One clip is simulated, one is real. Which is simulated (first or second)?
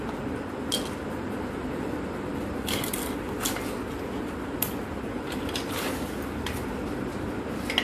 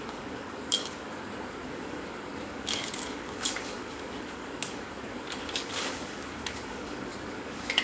second